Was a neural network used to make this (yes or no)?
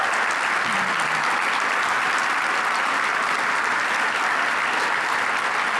no